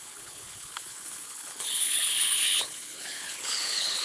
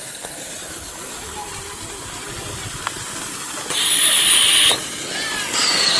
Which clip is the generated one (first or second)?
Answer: first